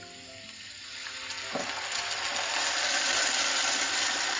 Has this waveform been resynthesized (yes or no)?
no